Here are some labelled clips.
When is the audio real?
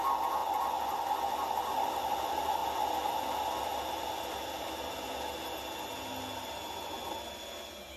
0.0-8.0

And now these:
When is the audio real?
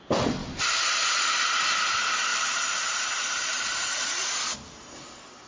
0.0-0.4; 1.3-2.3; 4.5-5.5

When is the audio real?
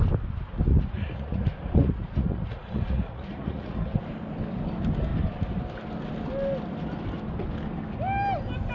0.0-0.7; 4.0-8.7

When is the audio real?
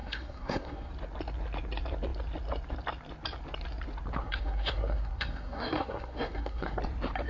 0.9-4.2; 6.8-7.3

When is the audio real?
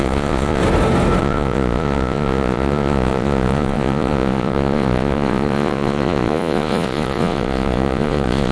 0.6-1.2